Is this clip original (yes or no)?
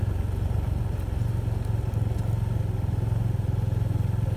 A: yes